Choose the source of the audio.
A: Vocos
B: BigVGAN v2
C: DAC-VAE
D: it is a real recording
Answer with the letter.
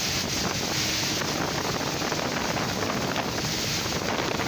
D